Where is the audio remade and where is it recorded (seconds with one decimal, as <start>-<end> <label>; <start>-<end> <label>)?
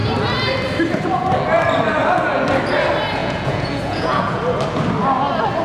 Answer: 0.0-3.2 recorded; 3.2-4.4 remade; 4.4-5.6 recorded